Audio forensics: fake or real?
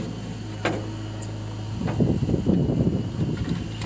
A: real